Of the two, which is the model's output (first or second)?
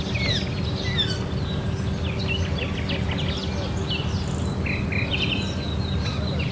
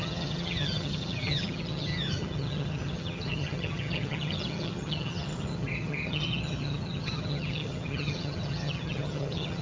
second